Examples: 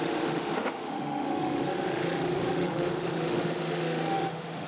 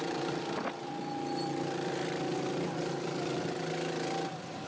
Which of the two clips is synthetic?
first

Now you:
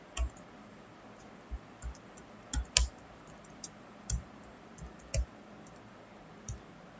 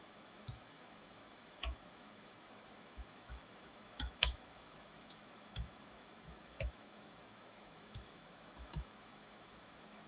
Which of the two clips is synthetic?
second